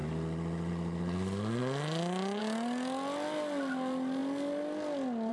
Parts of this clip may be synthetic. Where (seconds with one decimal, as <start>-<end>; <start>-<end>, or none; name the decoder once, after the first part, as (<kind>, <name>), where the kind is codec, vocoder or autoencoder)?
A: none

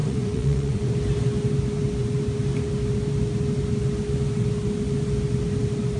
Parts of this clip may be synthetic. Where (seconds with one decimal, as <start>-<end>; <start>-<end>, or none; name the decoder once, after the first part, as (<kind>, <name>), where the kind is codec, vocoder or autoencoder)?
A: 0.0-0.9 (vocoder, Vocos)

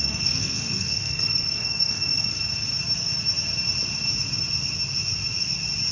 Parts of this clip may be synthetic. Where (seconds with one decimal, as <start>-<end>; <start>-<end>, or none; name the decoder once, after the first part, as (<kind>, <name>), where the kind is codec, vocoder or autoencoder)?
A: 0.0-2.3 (codec, SNAC)

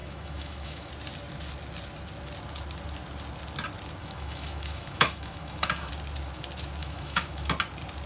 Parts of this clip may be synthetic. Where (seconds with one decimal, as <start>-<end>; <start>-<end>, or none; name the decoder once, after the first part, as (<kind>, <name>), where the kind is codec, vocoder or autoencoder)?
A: 0.0-0.9 (autoencoder, DAC-VAE); 4.0-5.9; 6.8-7.5

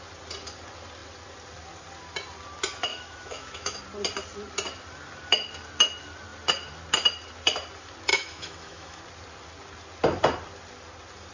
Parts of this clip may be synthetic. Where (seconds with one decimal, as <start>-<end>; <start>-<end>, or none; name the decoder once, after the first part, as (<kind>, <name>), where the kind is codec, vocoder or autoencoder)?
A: 2.9-3.8 (autoencoder, DAC-VAE); 8.1-9.0